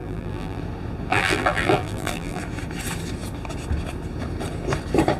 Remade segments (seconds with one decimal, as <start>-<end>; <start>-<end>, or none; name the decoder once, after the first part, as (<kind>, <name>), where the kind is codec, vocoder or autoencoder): 0.0-0.6 (vocoder, BigVGAN v2); 1.1-2.4